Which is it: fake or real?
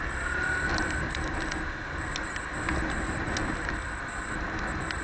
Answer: real